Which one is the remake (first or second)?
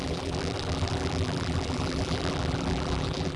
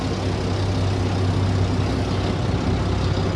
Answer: first